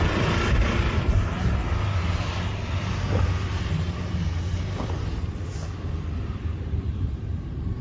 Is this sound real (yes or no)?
yes